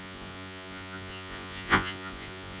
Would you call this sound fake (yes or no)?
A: yes